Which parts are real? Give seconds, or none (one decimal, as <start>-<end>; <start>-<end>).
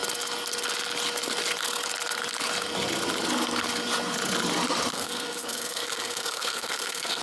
0.0-4.9